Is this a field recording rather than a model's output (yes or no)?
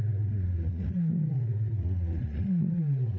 no